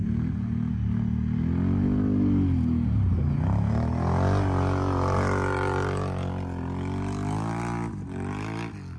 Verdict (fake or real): real